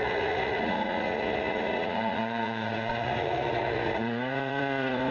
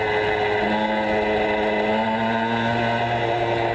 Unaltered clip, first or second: second